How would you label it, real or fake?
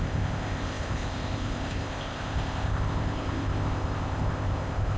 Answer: fake